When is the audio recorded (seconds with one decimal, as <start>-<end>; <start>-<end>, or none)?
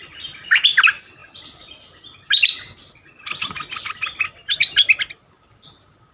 0.0-6.1